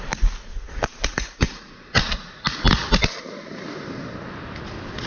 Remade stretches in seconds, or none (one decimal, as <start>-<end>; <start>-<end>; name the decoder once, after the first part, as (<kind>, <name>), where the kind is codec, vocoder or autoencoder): 0.5-2.4 (vocoder, Vocos)